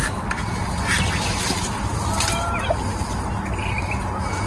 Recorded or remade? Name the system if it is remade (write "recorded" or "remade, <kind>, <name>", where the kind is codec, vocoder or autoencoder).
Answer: recorded